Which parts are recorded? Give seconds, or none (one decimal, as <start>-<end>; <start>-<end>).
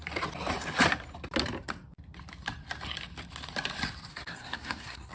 0.0-4.1